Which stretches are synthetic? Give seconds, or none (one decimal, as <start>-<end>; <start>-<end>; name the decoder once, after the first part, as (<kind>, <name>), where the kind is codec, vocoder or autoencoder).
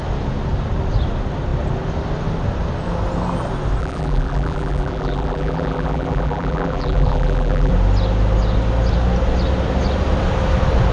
3.8-7.7 (vocoder, BigVGAN v2)